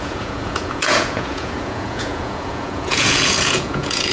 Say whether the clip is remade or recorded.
remade